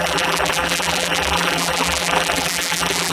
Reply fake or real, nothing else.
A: fake